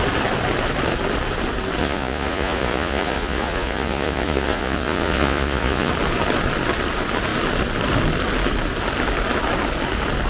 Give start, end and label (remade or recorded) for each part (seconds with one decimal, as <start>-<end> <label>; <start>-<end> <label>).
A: 0.0-1.8 recorded; 1.8-5.9 remade; 5.9-10.3 recorded